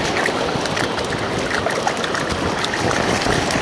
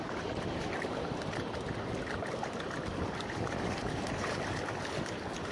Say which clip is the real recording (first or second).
first